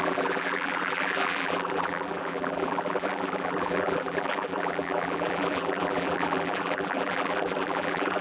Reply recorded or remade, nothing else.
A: remade